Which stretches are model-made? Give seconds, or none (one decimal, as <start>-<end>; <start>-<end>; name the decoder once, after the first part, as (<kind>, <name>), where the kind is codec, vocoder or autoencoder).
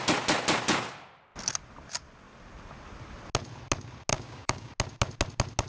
4.1-4.7 (codec, DAC)